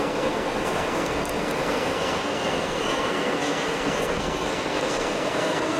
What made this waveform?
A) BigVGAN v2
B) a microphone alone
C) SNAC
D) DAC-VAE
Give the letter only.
C